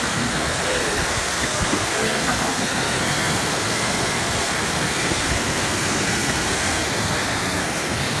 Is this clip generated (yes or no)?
yes